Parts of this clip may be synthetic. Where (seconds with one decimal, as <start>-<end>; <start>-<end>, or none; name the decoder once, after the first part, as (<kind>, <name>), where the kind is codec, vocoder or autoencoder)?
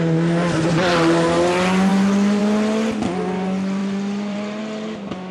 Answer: 3.8-4.6 (vocoder, BigVGAN v2)